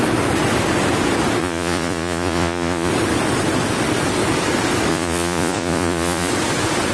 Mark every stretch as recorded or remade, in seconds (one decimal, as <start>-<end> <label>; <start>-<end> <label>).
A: 0.0-1.4 recorded; 1.4-2.9 remade; 2.9-4.9 recorded; 4.9-6.3 remade; 6.3-6.9 recorded